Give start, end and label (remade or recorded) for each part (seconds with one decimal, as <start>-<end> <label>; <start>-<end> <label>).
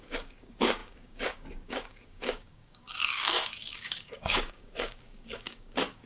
0.0-6.1 remade